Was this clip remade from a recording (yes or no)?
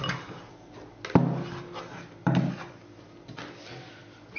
no